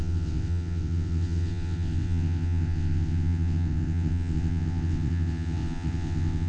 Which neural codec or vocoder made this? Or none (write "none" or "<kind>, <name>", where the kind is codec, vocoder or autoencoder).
vocoder, WaveNeXt